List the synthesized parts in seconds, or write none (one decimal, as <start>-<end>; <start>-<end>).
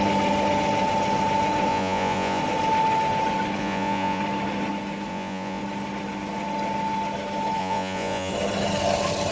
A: 1.7-2.4; 3.6-4.2; 5.1-5.6; 7.6-8.3